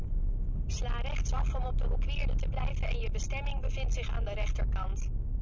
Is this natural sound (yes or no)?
yes